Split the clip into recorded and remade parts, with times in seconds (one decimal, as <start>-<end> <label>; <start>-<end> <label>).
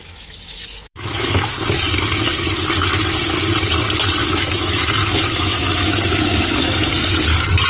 0.0-1.5 remade; 1.5-4.2 recorded; 4.2-6.9 remade; 6.9-7.7 recorded